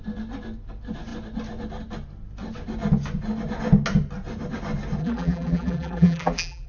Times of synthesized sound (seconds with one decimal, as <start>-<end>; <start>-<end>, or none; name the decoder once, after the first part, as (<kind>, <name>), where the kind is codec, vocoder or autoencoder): 5.0-6.7 (vocoder, BigVGAN v2)